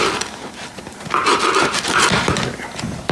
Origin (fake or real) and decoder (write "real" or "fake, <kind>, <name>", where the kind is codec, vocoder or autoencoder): fake, vocoder, BigVGAN v2